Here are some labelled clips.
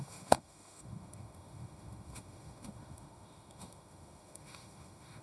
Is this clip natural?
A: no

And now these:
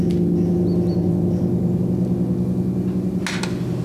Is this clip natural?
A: yes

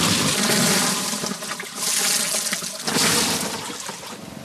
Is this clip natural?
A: yes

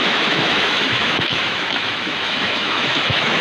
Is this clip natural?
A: no